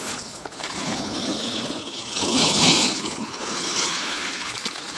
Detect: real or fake fake